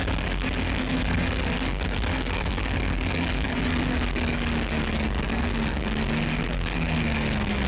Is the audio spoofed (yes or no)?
yes